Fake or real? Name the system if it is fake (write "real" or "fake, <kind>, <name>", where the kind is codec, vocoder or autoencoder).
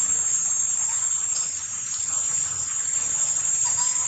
real